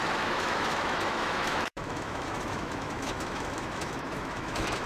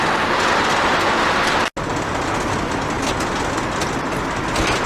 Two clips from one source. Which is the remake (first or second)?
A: first